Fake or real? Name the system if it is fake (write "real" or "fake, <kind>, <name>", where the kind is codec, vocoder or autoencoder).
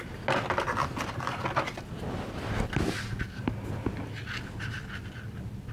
real